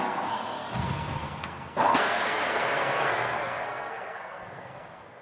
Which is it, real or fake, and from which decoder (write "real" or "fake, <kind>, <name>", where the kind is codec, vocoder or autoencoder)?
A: fake, codec, SNAC